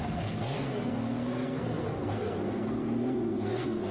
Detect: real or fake fake